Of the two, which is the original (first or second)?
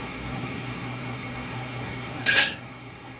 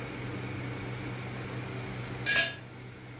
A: second